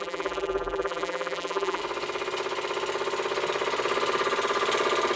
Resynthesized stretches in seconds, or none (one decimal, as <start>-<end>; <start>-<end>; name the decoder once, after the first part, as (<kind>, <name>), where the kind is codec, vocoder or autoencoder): 0.0-1.8 (vocoder, BigVGAN v2)